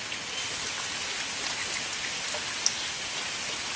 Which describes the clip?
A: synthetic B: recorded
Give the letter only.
B